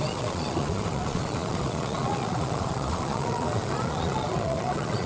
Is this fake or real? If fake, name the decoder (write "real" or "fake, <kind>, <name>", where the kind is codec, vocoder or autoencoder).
fake, vocoder, Vocos